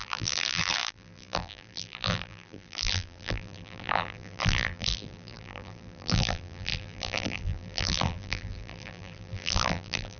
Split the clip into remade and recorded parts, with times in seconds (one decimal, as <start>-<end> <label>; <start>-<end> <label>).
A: 0.0-10.2 remade